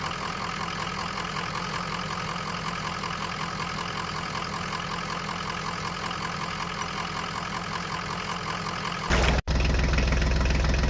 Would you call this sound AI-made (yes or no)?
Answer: no